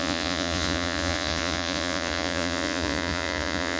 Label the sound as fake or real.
fake